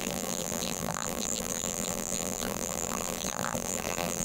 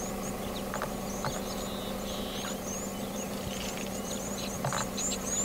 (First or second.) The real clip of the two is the second